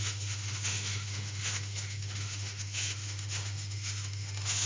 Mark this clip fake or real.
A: fake